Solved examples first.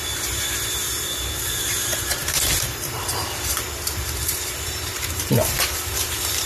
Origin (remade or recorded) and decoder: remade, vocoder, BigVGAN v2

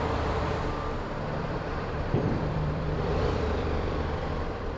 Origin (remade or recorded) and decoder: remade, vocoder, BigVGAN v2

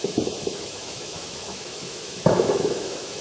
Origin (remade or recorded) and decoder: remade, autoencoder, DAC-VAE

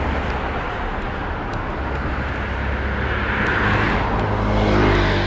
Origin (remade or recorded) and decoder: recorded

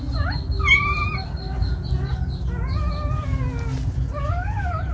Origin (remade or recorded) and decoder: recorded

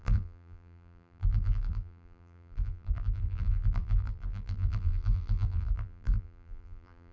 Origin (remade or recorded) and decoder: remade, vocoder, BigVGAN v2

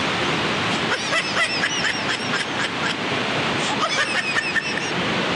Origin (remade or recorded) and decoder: recorded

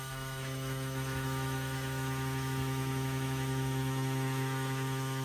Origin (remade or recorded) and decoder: remade, autoencoder, DAC-VAE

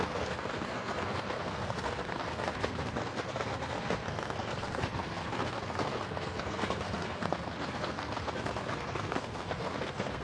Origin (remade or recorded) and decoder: remade, codec, SNAC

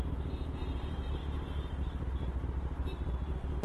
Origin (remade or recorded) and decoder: recorded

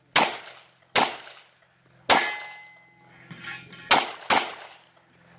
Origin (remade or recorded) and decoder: recorded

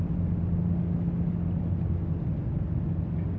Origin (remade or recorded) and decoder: recorded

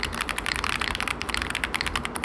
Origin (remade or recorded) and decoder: recorded